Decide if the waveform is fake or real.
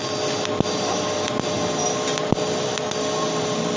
real